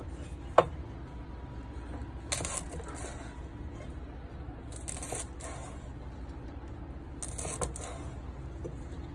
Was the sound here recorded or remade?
recorded